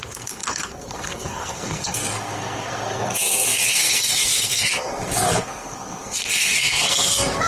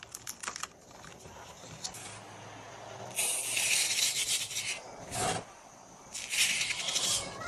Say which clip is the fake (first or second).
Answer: first